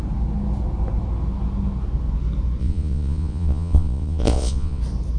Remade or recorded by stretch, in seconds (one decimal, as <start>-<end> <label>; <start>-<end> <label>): 0.0-2.6 recorded; 2.6-4.8 remade; 4.8-5.2 recorded